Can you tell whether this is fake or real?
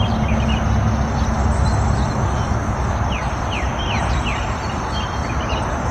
real